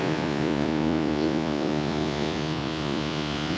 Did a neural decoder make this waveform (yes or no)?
yes